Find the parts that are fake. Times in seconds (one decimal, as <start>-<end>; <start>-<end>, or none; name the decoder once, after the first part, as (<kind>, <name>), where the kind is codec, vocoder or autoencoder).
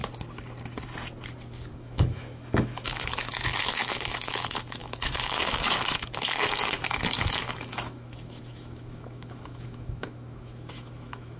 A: 1.7-11.4 (autoencoder, DAC-VAE)